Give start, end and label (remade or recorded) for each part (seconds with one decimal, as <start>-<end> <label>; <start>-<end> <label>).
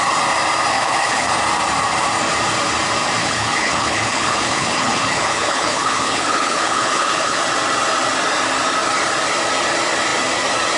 0.0-0.7 recorded; 0.7-1.3 remade; 1.3-3.2 recorded; 3.2-7.4 remade; 7.4-10.8 recorded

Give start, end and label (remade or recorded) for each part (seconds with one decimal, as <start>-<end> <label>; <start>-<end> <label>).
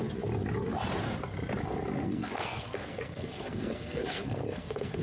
0.0-2.0 recorded; 2.0-5.0 remade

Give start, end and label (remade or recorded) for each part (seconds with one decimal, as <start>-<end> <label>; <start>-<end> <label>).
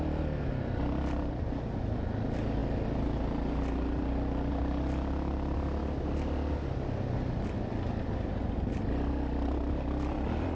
0.0-10.6 recorded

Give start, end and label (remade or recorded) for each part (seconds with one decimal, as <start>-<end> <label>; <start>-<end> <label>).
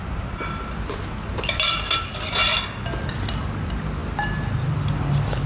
0.0-5.5 recorded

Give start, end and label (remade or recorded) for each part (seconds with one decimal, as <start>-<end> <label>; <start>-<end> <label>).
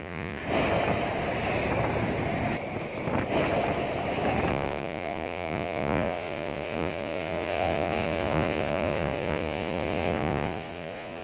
0.0-0.4 remade; 0.4-4.5 recorded; 4.5-11.2 remade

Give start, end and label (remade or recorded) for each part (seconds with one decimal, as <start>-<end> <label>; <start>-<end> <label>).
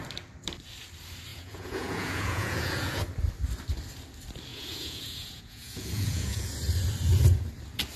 0.0-1.3 recorded; 1.3-3.0 remade; 3.0-4.5 recorded; 4.5-6.5 remade; 6.5-8.0 recorded